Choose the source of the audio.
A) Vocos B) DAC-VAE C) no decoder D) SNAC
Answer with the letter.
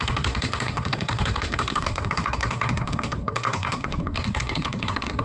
D